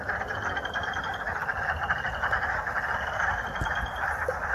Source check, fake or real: real